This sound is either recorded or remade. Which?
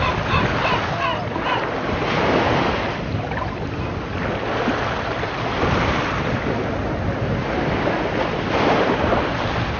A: recorded